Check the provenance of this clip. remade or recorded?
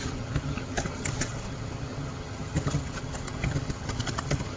remade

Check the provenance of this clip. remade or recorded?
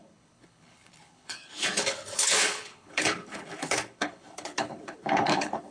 remade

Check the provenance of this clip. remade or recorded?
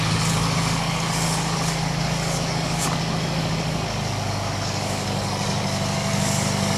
remade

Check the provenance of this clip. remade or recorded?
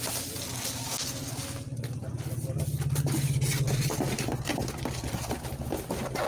recorded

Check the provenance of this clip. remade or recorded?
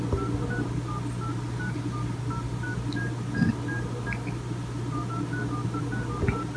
recorded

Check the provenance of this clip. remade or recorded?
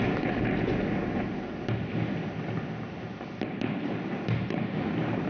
recorded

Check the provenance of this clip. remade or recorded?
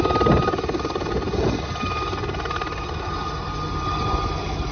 recorded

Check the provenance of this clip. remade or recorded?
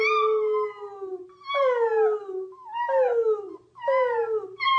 recorded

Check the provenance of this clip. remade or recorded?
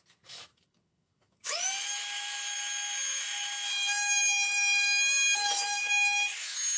remade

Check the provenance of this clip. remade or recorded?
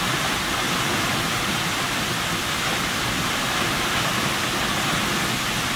recorded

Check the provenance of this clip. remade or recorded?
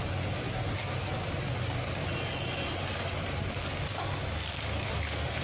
recorded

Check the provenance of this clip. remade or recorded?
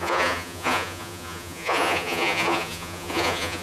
remade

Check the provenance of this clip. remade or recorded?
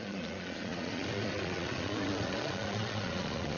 remade